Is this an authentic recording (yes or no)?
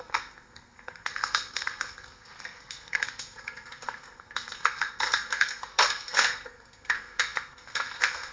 no